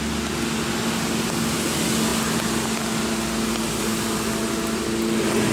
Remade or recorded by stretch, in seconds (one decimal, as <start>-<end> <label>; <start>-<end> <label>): 0.0-5.5 recorded